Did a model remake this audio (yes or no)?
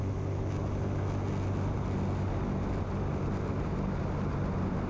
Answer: no